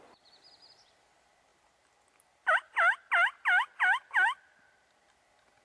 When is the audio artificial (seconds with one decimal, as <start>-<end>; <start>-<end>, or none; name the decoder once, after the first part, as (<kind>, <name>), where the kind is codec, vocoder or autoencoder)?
none